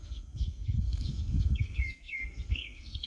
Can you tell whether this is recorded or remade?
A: remade